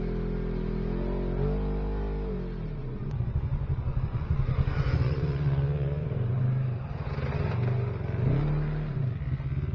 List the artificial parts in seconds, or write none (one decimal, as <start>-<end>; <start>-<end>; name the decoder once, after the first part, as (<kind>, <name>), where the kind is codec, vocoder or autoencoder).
2.8-6.4 (vocoder, Vocos)